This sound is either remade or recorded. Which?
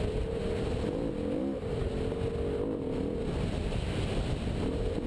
recorded